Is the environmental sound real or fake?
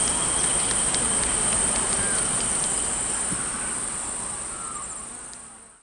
real